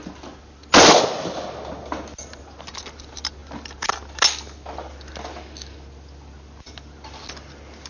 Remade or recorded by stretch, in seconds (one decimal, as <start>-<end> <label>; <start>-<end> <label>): 0.0-7.9 recorded